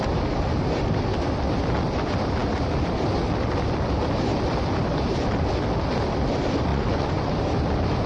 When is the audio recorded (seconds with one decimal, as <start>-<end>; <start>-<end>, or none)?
0.0-6.7; 7.3-8.1